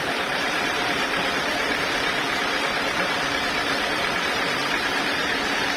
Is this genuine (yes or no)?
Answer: no